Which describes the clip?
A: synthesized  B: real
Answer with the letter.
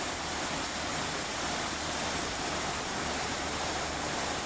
A